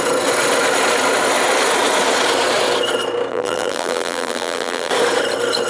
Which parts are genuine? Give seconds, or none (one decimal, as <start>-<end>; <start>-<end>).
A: 0.0-3.3; 4.9-5.7